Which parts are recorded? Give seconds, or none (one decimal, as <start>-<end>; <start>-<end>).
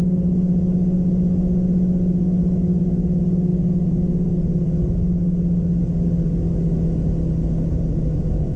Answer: 0.0-8.6